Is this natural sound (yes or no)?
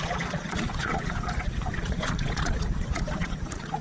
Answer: no